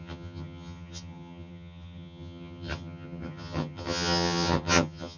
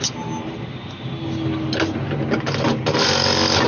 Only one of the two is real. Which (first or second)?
second